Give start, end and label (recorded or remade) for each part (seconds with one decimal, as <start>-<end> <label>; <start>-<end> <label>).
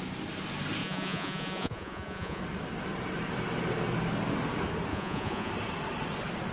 0.0-0.8 recorded; 0.8-2.4 remade; 2.4-4.9 recorded; 4.9-5.5 remade; 5.5-6.5 recorded